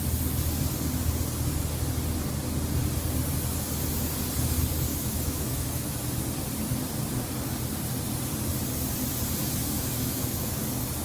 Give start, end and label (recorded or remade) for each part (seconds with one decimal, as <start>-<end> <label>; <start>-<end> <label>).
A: 0.0-4.9 recorded; 4.9-6.1 remade; 6.1-9.4 recorded; 9.4-10.6 remade; 10.6-11.0 recorded

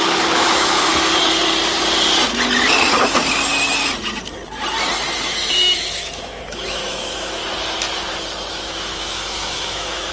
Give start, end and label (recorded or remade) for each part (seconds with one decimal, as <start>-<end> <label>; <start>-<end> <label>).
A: 0.0-0.9 remade; 0.9-5.3 recorded; 5.3-7.4 remade; 7.4-8.5 recorded; 8.5-10.1 remade